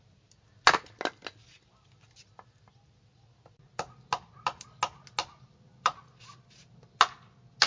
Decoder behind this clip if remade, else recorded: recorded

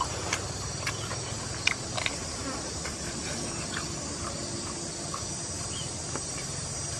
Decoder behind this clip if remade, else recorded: recorded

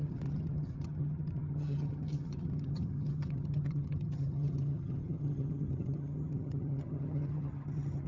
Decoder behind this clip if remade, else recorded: remade, vocoder, HiFi-GAN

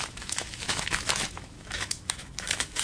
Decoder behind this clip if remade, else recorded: remade, autoencoder, DAC-VAE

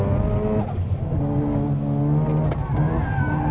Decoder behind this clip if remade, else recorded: recorded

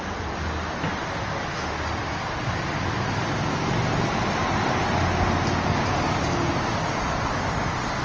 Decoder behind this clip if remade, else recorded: recorded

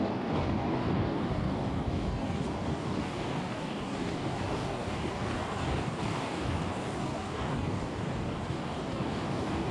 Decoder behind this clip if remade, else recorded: remade, codec, DAC